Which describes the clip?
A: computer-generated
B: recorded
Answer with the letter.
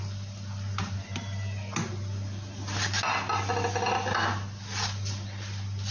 B